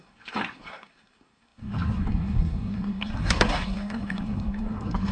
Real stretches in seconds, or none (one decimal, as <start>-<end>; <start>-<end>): none